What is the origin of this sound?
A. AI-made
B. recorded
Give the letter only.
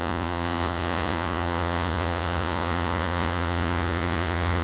A